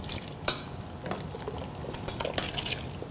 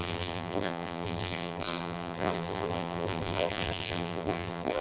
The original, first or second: first